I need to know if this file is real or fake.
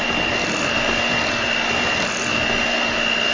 real